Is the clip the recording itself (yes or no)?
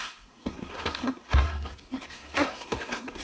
no